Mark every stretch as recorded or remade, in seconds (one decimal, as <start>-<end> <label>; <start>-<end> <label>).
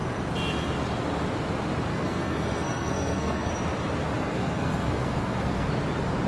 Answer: 0.0-1.9 recorded; 1.9-3.5 remade; 3.5-4.2 recorded; 4.2-5.7 remade; 5.7-6.3 recorded